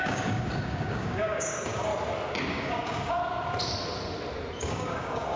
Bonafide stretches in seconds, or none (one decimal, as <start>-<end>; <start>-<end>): 1.9-2.5; 3.2-4.6